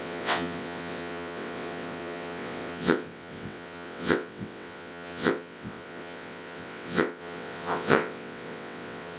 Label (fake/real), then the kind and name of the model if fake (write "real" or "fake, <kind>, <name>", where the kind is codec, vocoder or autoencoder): fake, vocoder, WaveNeXt